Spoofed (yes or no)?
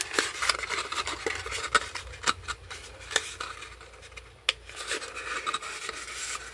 no